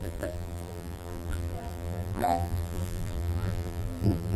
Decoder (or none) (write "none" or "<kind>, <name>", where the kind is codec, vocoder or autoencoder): vocoder, BigVGAN v2